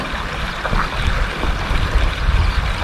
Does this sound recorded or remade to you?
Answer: recorded